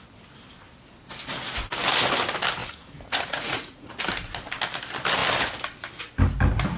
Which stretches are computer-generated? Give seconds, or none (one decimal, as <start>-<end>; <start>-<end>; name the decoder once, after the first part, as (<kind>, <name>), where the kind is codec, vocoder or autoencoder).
2.6-4.0 (vocoder, Vocos)